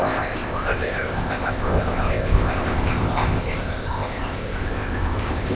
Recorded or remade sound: remade